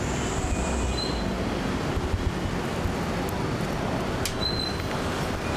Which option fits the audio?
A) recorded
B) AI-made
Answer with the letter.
A